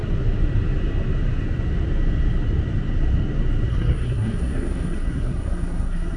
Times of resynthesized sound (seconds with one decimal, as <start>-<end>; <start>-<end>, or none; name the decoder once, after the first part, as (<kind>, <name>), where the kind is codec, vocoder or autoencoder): 3.7-6.2 (codec, SNAC)